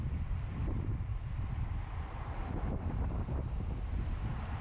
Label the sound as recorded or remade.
remade